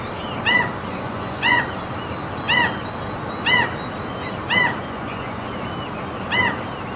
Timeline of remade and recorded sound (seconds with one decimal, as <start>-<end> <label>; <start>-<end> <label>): 0.0-0.9 recorded; 0.9-1.6 remade; 1.6-4.8 recorded; 4.8-5.5 remade; 5.5-7.0 recorded